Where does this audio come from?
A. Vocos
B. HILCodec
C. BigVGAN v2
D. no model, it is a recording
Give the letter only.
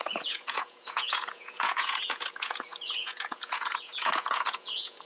A